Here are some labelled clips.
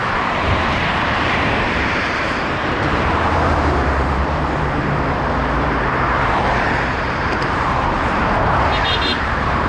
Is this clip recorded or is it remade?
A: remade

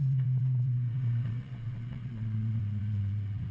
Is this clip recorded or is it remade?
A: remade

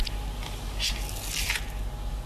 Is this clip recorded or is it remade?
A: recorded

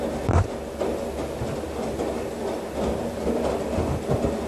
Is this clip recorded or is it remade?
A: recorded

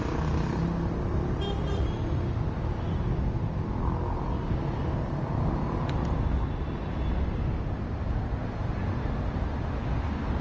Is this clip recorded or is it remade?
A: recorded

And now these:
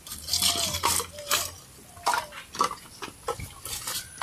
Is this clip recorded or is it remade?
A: recorded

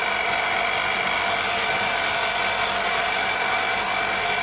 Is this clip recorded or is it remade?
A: recorded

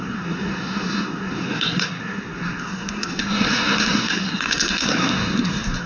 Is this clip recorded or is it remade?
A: remade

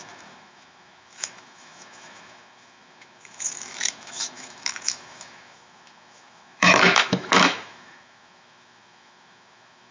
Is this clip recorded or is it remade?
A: remade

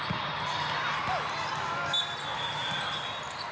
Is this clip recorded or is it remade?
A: recorded